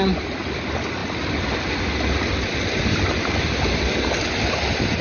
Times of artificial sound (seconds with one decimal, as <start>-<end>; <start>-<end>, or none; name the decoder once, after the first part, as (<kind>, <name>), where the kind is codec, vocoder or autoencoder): none